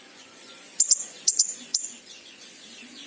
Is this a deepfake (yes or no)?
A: yes